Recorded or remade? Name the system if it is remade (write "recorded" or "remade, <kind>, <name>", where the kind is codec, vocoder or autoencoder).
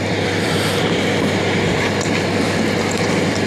remade, vocoder, BigVGAN v2